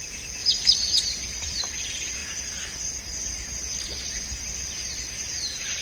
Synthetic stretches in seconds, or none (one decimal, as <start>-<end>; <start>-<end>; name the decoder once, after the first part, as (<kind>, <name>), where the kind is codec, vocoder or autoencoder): 0.4-1.6 (vocoder, BigVGAN v2); 2.2-5.8